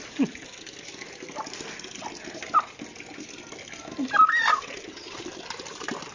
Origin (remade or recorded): recorded